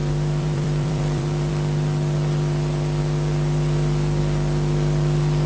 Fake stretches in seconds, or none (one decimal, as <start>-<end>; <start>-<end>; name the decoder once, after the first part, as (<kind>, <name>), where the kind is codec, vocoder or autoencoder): 0.0-1.5 (vocoder, BigVGAN v2)